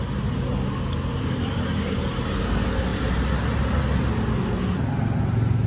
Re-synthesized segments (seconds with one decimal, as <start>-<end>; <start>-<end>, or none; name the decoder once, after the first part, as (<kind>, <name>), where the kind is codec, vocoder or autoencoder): 1.1-2.2 (vocoder, BigVGAN v2); 2.9-3.8